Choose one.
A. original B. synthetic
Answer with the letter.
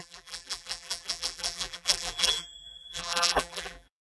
B